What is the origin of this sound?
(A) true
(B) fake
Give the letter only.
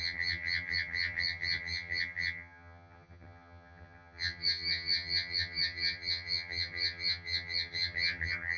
B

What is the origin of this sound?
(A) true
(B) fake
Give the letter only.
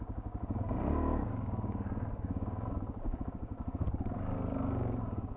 B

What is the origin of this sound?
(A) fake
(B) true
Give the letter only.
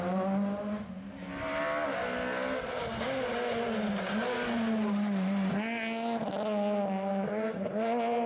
B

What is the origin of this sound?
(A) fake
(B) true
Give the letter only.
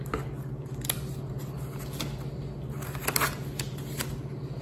B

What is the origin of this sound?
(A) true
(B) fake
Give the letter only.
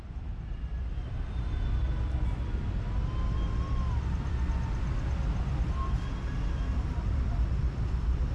A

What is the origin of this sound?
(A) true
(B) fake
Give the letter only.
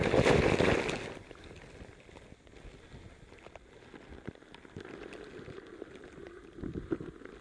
A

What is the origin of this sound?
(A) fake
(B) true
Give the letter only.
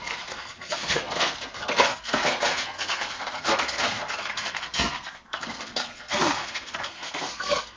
A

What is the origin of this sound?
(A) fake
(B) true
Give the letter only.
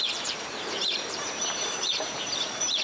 A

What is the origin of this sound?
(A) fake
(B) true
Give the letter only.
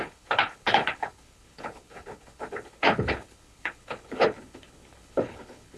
A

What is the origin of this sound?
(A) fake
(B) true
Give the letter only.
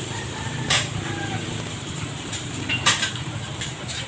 A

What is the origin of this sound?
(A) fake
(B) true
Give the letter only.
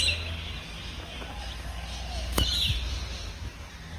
B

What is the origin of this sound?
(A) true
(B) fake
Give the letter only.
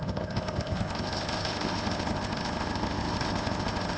B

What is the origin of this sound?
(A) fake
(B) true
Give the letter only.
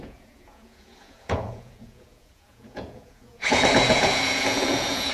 A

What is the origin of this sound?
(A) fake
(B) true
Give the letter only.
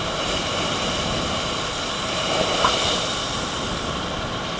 A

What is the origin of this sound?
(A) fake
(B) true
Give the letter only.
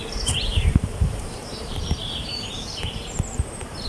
A